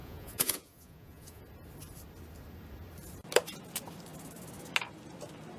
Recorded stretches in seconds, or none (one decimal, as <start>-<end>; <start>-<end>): 1.4-5.6